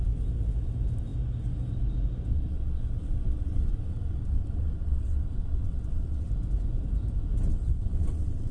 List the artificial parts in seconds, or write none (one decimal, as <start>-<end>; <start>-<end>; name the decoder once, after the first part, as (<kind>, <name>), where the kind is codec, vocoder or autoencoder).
2.3-6.3 (vocoder, WaveNeXt); 7.5-8.5